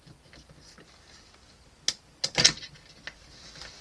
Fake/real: real